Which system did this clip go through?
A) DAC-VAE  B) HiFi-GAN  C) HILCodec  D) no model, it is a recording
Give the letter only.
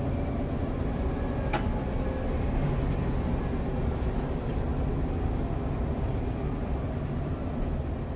D